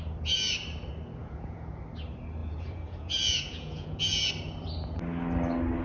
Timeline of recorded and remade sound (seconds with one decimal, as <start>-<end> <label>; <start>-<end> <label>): 0.0-1.2 recorded; 1.2-1.8 remade; 1.8-2.4 recorded; 2.4-4.0 remade; 4.0-5.8 recorded